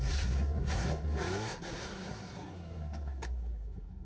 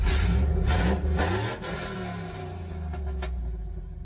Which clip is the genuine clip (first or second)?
second